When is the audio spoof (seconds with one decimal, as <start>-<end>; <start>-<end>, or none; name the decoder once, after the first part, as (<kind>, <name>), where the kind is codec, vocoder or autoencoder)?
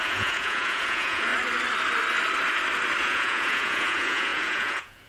0.0-1.3 (vocoder, Vocos); 3.0-5.1